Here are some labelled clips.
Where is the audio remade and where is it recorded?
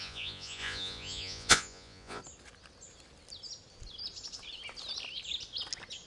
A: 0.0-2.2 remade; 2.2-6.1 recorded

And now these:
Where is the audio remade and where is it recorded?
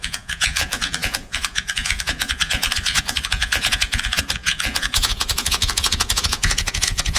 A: 0.0-7.2 remade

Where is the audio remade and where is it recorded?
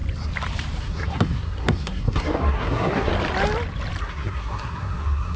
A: 0.0-0.8 recorded; 0.8-3.1 remade; 3.1-4.0 recorded; 4.0-5.4 remade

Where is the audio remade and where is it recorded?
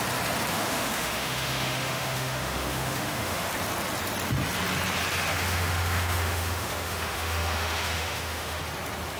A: 0.0-0.5 recorded; 0.5-3.5 remade; 3.5-5.3 recorded; 5.3-8.6 remade; 8.6-9.2 recorded